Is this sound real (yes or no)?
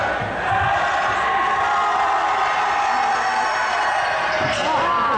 yes